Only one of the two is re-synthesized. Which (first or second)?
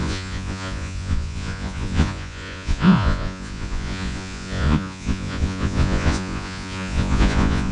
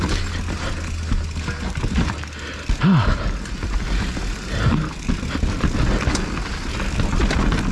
first